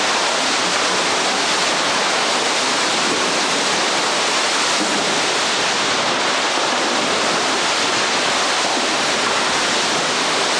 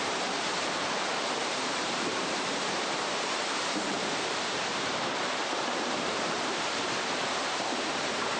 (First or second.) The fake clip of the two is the second